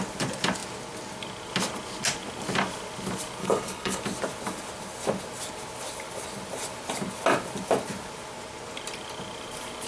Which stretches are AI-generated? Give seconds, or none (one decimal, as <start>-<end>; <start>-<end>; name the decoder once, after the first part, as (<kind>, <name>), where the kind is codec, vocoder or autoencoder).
3.4-4.0 (codec, HILCodec)